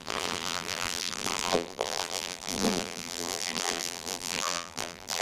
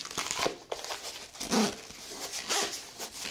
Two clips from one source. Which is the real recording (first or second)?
second